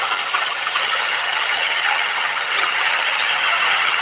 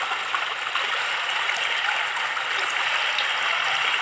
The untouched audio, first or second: second